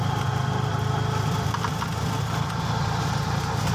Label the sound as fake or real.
real